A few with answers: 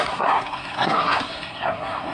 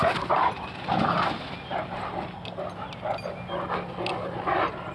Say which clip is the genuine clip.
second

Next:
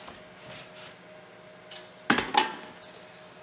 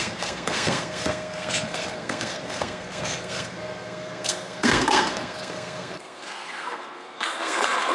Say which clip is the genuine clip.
first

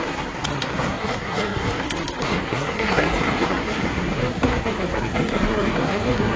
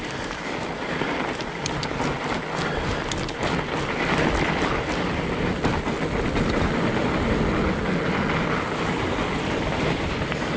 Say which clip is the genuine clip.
second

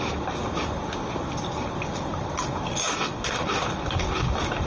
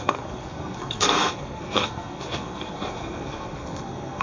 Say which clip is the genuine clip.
first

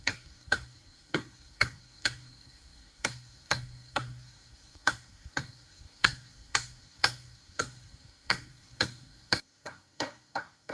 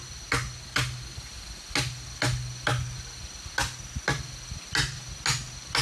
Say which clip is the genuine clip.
second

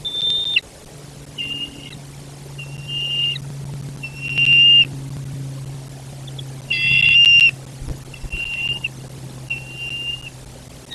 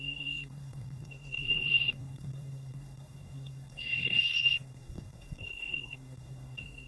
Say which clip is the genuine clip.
first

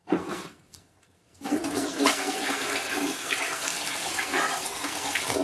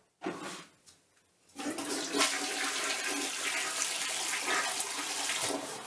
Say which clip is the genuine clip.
second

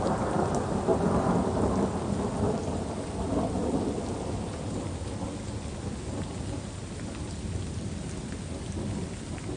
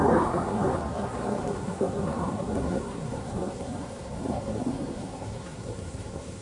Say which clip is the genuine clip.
first